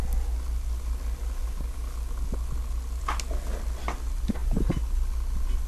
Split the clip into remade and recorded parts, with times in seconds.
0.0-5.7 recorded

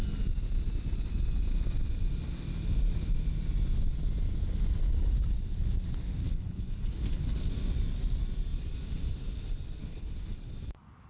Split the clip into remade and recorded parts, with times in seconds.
0.0-6.2 recorded; 6.2-7.5 remade; 7.5-9.8 recorded; 9.8-10.5 remade; 10.5-11.1 recorded

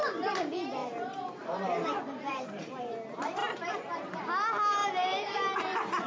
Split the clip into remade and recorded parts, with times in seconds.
0.0-0.8 recorded; 0.8-2.8 remade; 2.8-3.4 recorded; 3.4-4.2 remade; 4.2-4.8 recorded; 4.8-6.1 remade

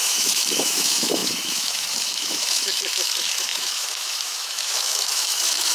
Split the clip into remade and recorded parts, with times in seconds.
0.0-5.7 remade

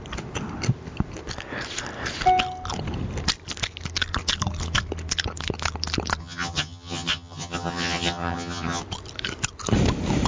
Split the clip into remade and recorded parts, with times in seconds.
0.0-6.2 recorded; 6.2-8.8 remade; 8.8-10.3 recorded

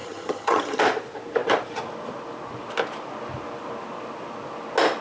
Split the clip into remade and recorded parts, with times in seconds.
0.0-0.8 remade; 0.8-5.0 recorded

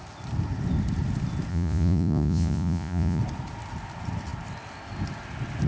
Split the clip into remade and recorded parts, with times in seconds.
0.0-1.5 recorded; 1.5-3.2 remade; 3.2-5.7 recorded